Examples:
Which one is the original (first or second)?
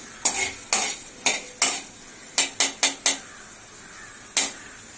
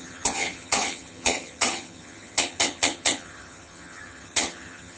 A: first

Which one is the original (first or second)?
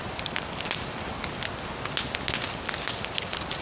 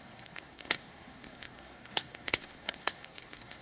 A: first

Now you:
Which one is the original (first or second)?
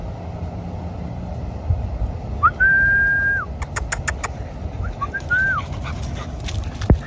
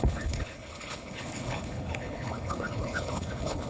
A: first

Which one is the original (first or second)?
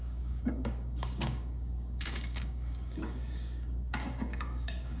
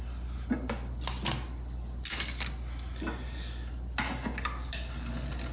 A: second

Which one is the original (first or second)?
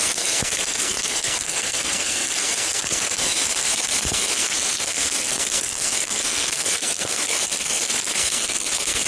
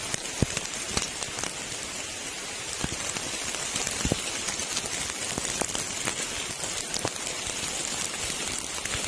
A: second